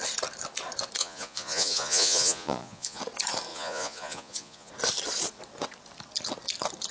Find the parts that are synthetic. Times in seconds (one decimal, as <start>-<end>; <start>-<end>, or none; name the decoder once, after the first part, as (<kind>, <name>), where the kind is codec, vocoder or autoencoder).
1.0-3.0 (vocoder, Vocos); 3.5-4.7